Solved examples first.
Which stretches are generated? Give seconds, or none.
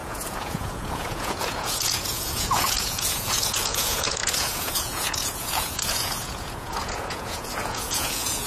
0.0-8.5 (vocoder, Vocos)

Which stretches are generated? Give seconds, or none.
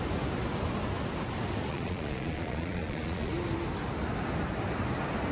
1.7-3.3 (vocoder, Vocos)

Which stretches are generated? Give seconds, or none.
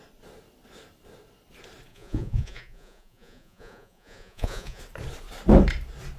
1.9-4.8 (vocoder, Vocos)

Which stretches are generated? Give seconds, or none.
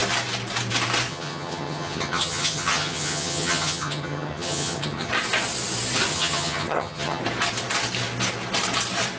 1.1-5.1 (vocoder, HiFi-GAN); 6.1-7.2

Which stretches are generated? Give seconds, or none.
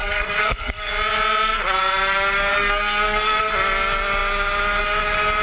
0.0-0.9 (codec, SNAC); 2.5-3.4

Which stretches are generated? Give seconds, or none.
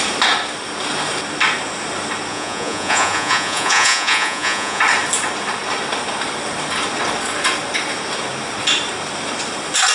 2.3-4.8 (vocoder, Vocos)